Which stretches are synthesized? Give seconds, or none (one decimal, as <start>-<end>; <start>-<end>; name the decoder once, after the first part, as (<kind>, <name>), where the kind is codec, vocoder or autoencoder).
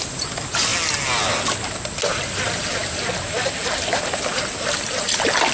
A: none